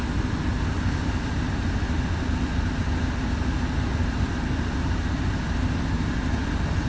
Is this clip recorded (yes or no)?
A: yes